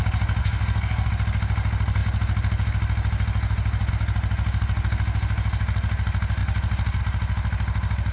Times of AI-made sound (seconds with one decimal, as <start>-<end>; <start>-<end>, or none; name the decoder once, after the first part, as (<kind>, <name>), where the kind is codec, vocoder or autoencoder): 0.4-1.1 (codec, SNAC)